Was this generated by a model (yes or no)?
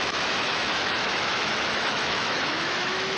yes